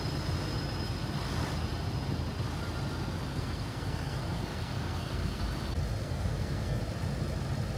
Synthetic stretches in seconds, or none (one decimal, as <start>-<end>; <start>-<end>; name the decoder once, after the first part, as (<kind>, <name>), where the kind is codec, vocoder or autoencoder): 3.3-5.4 (codec, SNAC); 6.0-6.8